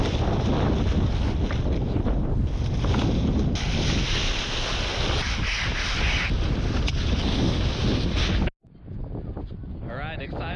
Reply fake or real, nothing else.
real